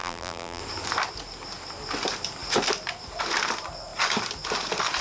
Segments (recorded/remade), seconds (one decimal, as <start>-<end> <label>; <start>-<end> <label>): 0.0-0.6 remade; 0.6-5.0 recorded